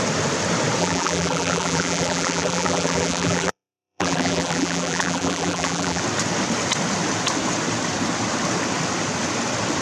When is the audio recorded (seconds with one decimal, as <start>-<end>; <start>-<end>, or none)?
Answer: 0.0-0.8; 6.0-9.8